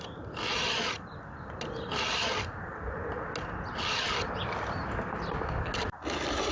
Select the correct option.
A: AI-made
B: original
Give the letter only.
B